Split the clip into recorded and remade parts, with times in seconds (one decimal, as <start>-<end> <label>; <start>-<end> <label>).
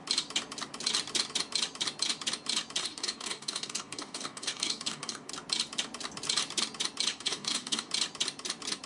0.0-2.8 recorded; 2.8-5.3 remade; 5.3-7.1 recorded; 7.1-7.9 remade; 7.9-8.9 recorded